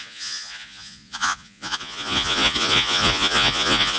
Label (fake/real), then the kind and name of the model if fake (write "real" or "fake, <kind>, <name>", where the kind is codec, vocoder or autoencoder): fake, vocoder, Vocos